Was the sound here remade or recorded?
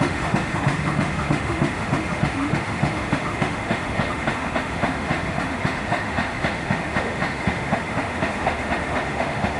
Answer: remade